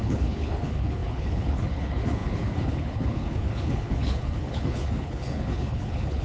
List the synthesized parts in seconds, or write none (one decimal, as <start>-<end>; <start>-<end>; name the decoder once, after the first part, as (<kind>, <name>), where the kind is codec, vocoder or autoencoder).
0.0-6.2 (codec, HILCodec)